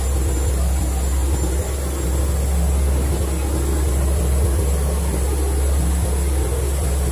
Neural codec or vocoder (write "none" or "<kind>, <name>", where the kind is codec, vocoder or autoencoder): none